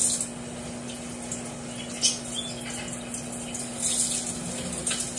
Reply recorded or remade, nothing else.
recorded